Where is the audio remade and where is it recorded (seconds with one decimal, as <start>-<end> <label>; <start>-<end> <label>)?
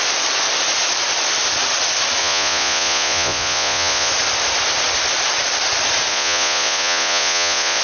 0.0-2.2 recorded; 2.2-4.1 remade; 4.1-6.1 recorded; 6.1-7.8 remade